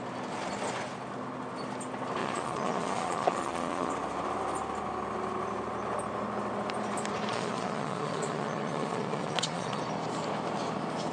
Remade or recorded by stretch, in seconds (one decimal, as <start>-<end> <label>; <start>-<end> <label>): 0.0-2.2 recorded; 2.2-3.9 remade; 3.9-7.3 recorded; 7.3-9.8 remade; 9.8-11.1 recorded

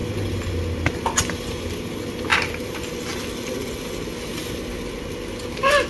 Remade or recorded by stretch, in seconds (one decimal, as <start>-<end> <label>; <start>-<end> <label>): 0.0-5.9 recorded